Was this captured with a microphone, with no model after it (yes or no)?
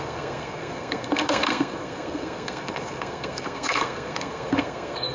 no